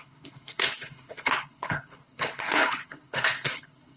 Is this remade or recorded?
remade